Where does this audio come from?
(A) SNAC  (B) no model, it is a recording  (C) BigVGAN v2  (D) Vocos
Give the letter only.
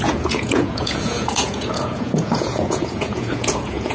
D